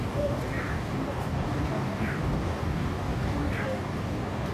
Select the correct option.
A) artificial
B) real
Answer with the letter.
A